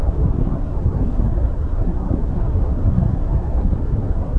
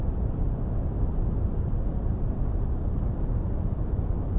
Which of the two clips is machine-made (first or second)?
first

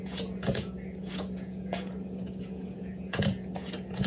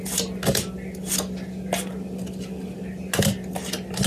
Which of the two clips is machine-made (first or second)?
first